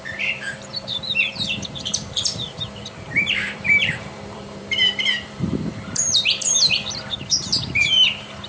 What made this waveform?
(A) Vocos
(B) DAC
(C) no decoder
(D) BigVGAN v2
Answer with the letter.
D